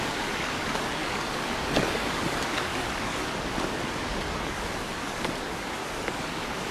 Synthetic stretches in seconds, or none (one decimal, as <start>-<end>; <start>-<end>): 0.0-6.7